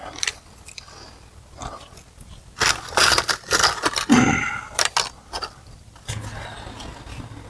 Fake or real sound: real